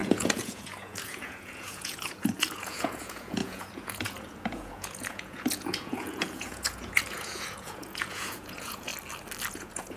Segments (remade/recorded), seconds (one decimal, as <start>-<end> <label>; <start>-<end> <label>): 0.0-8.9 remade; 8.9-9.5 recorded; 9.5-10.0 remade